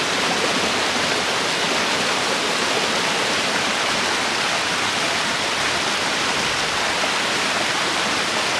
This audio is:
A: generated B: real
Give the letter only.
B